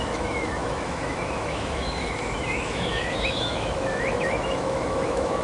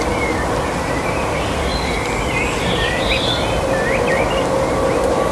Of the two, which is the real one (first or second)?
second